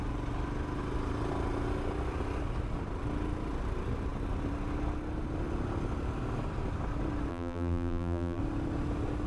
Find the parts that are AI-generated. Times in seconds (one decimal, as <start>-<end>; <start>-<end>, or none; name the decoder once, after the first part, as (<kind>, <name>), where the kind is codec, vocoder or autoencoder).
7.3-8.4 (vocoder, BigVGAN v2)

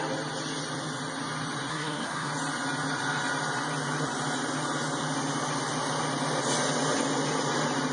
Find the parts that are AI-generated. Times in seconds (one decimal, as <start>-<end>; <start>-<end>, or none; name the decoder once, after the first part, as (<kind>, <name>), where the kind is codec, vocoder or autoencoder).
1.7-2.3 (codec, SNAC)

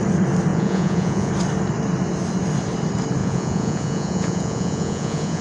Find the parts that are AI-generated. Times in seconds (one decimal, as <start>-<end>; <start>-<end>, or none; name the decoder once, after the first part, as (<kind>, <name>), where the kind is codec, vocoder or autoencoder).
0.5-1.3 (vocoder, Vocos); 3.2-5.4

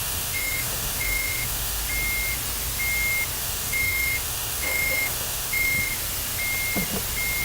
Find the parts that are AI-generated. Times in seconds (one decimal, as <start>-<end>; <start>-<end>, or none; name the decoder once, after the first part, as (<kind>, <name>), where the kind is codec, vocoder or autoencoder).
0.0-1.8 (autoencoder, DAC-VAE); 3.4-5.9

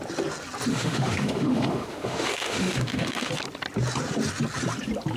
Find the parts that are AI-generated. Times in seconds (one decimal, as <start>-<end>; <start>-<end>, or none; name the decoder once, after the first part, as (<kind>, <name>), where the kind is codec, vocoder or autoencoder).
0.7-3.3 (autoencoder, DAC-VAE)

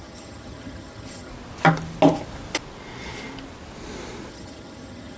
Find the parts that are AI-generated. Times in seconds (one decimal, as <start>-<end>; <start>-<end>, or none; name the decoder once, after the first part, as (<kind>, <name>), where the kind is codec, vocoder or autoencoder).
0.0-1.3 (vocoder, HiFi-GAN); 4.3-5.2